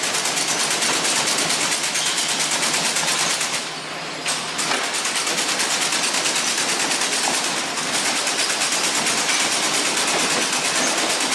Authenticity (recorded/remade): recorded